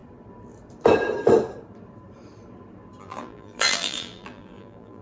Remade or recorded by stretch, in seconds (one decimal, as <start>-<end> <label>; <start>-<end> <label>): 0.0-3.0 recorded; 3.0-5.0 remade